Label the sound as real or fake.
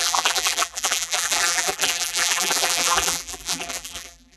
fake